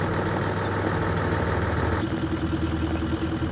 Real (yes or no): yes